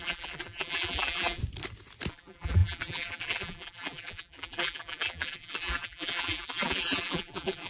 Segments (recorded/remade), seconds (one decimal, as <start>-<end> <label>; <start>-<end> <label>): 0.0-1.4 remade; 1.4-2.1 recorded; 2.1-7.7 remade